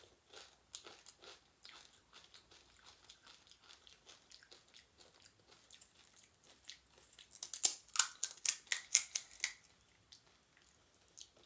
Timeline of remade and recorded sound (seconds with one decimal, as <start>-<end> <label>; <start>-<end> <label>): 0.0-11.5 recorded